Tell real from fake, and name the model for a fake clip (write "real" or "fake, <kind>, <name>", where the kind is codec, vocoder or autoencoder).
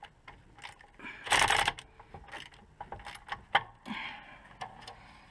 real